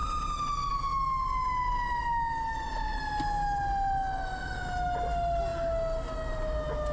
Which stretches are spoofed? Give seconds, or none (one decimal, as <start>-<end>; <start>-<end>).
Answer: none